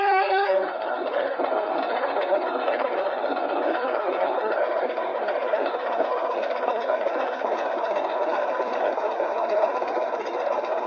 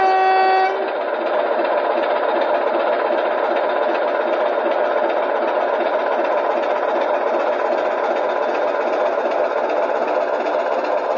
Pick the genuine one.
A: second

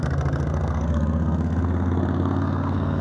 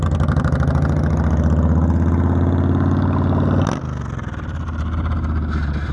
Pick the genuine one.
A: second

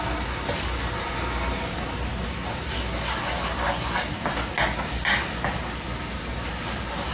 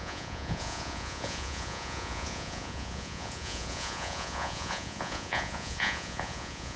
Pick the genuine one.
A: first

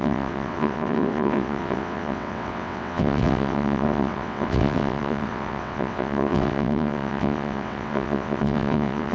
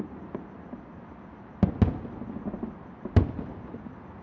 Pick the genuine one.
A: second